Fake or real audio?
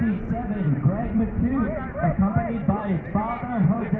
fake